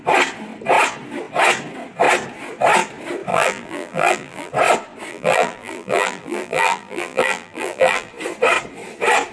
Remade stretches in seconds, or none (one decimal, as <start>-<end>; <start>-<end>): 3.3-4.5; 5.1-8.1